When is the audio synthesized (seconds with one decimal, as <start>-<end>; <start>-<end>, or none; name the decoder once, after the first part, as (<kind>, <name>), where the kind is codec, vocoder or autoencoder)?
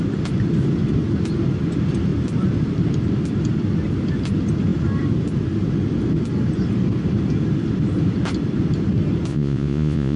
9.3-10.2 (vocoder, Vocos)